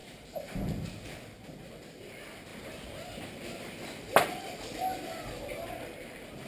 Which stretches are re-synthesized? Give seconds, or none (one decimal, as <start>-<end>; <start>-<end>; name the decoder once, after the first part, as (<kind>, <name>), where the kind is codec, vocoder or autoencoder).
0.0-0.9 (vocoder, BigVGAN v2)